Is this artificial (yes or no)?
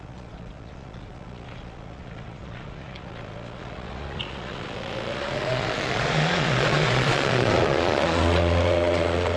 yes